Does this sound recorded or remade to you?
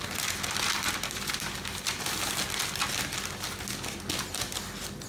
recorded